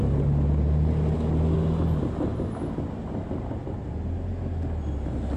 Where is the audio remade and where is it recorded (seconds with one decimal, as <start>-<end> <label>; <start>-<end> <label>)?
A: 0.0-5.4 recorded